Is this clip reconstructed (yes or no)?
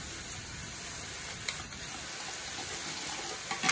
no